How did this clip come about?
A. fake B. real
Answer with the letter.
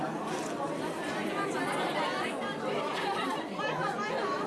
B